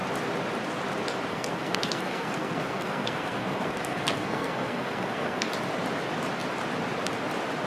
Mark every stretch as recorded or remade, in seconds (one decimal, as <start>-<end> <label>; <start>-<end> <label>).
0.0-1.3 recorded; 1.3-5.5 remade; 5.5-7.7 recorded